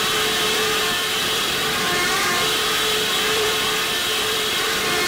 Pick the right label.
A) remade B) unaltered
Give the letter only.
A